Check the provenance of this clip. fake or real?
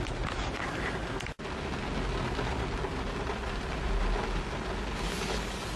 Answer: real